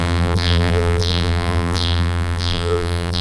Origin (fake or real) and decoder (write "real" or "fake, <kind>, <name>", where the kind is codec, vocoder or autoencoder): fake, vocoder, BigVGAN v2